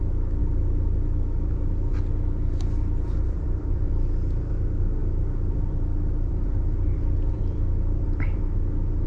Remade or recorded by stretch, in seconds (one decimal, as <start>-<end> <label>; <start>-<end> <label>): 0.0-0.4 recorded; 0.4-3.9 remade; 3.9-5.0 recorded; 5.0-8.4 remade; 8.4-9.1 recorded